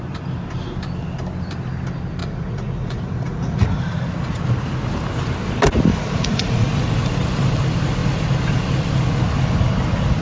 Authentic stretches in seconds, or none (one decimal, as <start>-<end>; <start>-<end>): 0.0-2.2; 3.8-5.9; 6.7-10.2